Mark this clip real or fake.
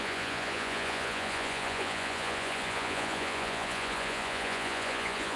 fake